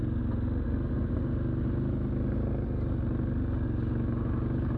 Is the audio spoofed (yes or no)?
no